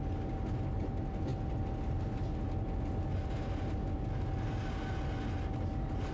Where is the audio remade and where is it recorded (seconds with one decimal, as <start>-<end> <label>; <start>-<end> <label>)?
0.0-6.1 recorded